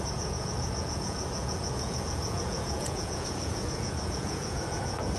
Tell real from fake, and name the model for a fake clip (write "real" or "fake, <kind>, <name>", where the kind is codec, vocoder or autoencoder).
fake, vocoder, Vocos